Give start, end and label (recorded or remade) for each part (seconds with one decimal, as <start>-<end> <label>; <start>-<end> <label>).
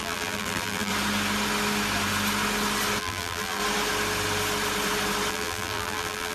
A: 0.0-0.9 remade; 0.9-3.0 recorded; 3.0-3.6 remade; 3.6-5.3 recorded; 5.3-6.3 remade